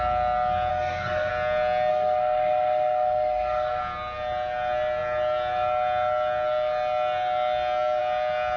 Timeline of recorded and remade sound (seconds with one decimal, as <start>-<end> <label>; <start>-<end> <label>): 0.0-0.7 recorded; 0.7-1.3 remade; 1.3-1.9 recorded; 1.9-3.8 remade; 3.8-8.6 recorded